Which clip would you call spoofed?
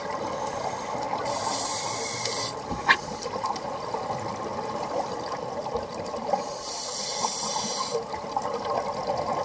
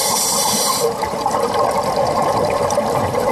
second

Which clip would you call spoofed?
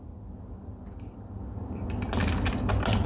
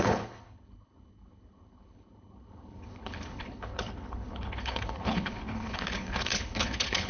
second